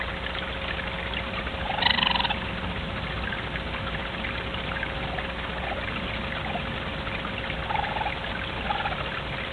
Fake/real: real